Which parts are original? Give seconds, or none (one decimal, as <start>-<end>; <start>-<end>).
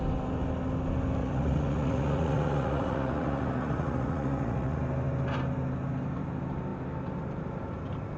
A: 0.0-1.2; 4.8-8.2